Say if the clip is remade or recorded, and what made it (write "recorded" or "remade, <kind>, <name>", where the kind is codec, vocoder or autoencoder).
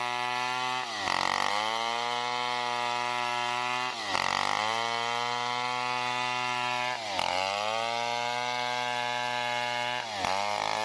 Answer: recorded